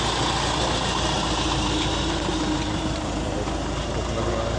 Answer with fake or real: real